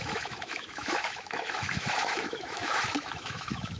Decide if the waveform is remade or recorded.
remade